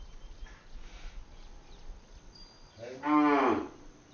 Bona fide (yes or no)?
yes